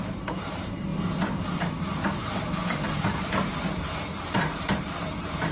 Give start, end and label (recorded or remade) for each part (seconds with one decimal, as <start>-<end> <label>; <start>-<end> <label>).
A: 0.0-0.9 remade; 0.9-1.4 recorded; 1.4-5.5 remade